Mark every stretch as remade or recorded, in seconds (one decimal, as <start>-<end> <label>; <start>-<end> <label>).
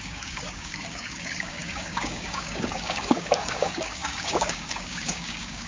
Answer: 0.0-5.7 remade